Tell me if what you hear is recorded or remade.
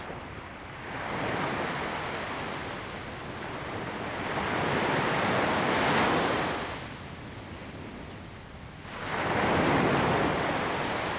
recorded